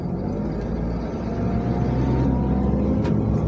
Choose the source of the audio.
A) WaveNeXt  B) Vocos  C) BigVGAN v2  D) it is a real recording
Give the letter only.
D